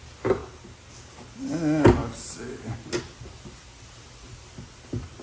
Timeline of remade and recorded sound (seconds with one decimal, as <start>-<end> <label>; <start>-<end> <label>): 0.0-5.2 recorded